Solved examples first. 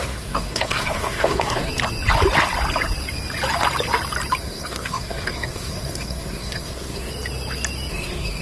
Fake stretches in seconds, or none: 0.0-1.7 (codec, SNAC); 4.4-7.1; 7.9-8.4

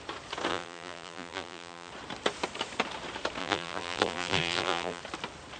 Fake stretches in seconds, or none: 0.5-1.9 (vocoder, BigVGAN v2); 3.4-5.0

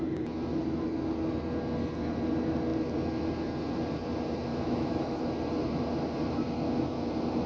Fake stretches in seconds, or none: 4.5-5.2 (autoencoder, DAC-VAE)

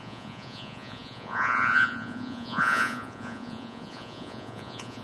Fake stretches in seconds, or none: 0.0-5.0 (vocoder, Vocos)

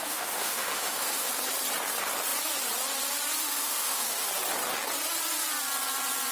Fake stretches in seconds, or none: 0.0-1.3 (autoencoder, DAC-VAE); 3.4-4.3

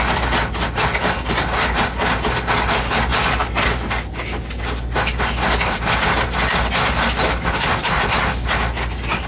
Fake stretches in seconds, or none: none

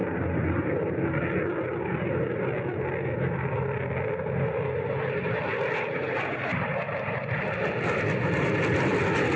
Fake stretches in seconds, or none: none